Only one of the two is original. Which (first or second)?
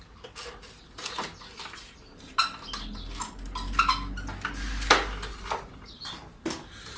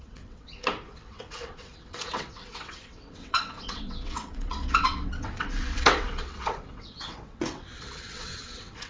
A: first